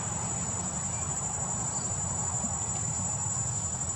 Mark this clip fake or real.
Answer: real